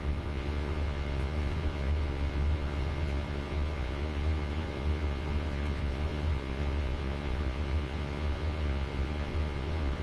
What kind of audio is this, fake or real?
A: fake